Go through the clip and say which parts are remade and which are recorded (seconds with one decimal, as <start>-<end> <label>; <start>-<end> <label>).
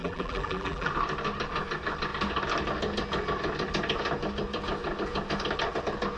0.0-0.9 remade; 0.9-6.2 recorded